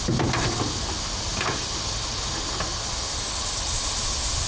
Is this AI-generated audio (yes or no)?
no